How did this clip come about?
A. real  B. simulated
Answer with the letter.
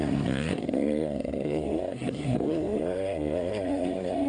B